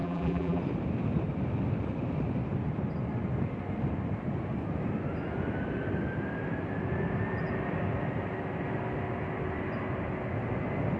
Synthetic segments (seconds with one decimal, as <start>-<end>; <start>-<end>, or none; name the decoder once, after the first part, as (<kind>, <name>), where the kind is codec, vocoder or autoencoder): 0.0-0.6 (vocoder, BigVGAN v2)